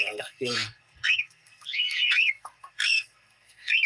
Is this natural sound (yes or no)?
no